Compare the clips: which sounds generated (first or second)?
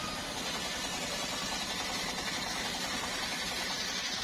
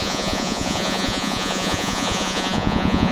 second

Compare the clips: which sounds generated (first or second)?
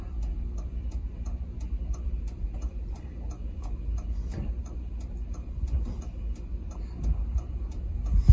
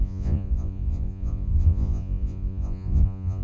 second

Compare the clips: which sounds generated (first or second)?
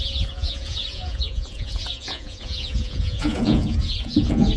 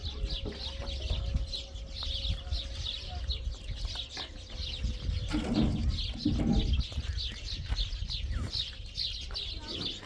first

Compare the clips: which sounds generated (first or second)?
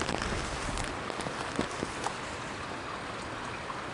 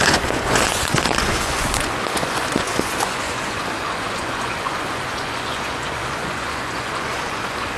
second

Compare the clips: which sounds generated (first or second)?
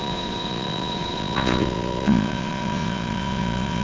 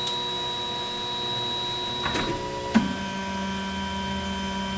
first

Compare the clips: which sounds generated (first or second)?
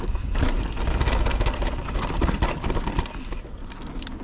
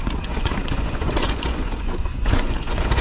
second